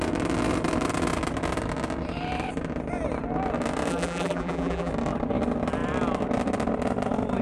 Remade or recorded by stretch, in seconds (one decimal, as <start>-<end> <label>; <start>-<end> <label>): 0.0-3.9 recorded; 3.9-4.9 remade; 4.9-7.4 recorded